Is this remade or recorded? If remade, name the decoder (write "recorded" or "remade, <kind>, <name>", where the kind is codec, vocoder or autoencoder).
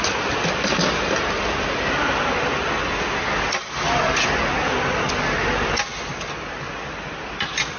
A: recorded